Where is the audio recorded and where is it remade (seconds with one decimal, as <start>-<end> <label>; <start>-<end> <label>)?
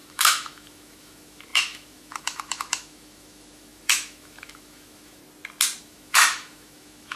0.0-5.2 remade; 5.2-5.8 recorded; 5.8-7.2 remade